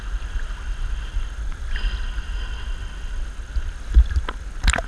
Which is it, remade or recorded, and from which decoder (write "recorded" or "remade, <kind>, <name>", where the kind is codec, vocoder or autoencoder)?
recorded